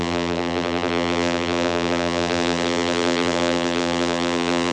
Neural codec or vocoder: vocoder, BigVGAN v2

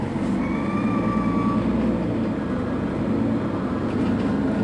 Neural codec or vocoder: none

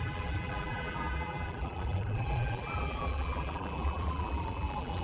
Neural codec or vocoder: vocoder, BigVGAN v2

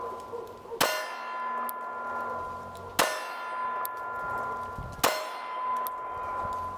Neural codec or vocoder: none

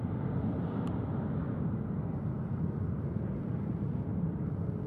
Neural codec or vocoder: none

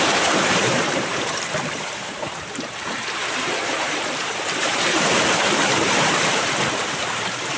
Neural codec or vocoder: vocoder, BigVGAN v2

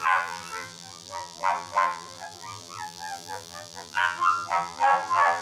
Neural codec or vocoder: vocoder, BigVGAN v2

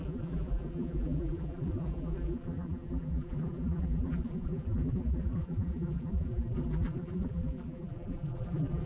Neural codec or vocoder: vocoder, BigVGAN v2